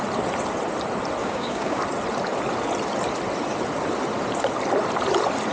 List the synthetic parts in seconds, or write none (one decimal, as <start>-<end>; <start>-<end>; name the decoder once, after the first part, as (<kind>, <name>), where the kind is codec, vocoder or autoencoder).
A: 1.2-1.8 (codec, DAC)